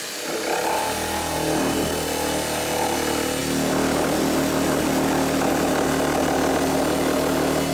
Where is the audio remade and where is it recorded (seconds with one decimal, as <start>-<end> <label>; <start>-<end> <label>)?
0.0-7.7 recorded